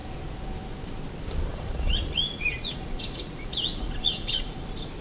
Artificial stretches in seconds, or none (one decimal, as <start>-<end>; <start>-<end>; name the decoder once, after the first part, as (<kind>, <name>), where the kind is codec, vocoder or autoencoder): 1.5-4.5 (vocoder, Vocos)